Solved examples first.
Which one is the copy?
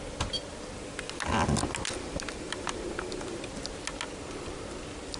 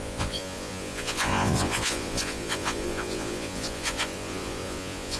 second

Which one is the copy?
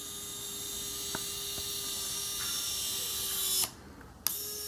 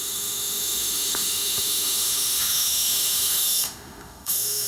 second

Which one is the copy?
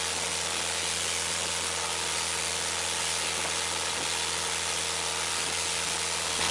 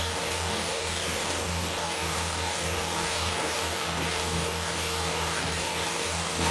second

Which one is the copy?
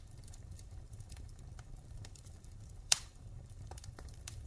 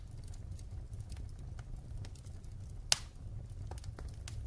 first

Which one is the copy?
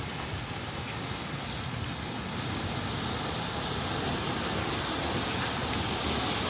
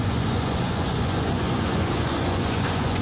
second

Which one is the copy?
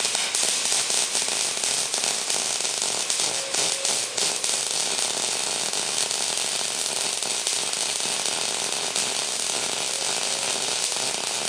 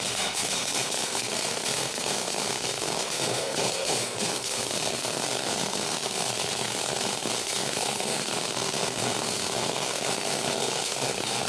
second